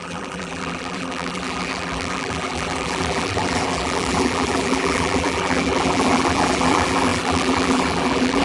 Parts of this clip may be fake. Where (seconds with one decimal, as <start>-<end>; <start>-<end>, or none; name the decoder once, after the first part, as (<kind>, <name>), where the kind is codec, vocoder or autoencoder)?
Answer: 0.0-8.4 (vocoder, BigVGAN v2)

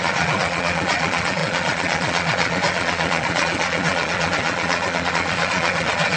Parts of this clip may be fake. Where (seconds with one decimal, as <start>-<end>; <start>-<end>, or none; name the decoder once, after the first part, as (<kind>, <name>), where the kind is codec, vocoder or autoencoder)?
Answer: 0.0-6.2 (vocoder, Vocos)

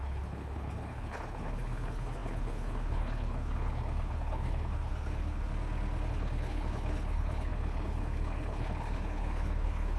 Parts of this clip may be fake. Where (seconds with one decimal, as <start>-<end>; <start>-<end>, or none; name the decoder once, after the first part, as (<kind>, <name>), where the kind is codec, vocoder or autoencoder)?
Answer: 0.0-5.5 (codec, HILCodec); 6.1-10.0

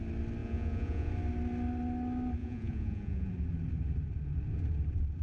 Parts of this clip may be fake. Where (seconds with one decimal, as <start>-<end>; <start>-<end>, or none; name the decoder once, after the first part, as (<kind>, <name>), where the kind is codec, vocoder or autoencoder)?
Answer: 0.4-1.1 (vocoder, Vocos); 2.4-3.3

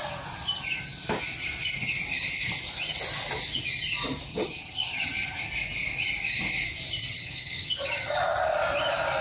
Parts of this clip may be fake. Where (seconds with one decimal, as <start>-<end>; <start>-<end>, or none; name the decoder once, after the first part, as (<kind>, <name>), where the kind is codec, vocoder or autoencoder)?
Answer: 4.3-5.4 (vocoder, HiFi-GAN); 7.0-8.1